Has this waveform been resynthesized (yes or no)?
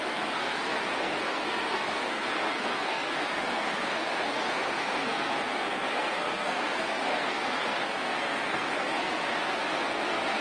yes